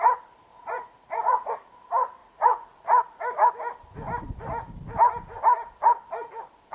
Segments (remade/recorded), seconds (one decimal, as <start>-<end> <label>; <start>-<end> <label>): 0.0-0.5 recorded; 0.5-1.5 remade; 1.5-2.2 recorded; 2.2-3.2 remade; 3.2-6.7 recorded